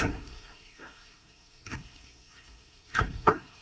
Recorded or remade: remade